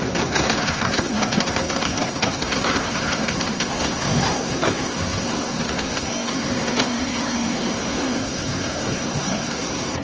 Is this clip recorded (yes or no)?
no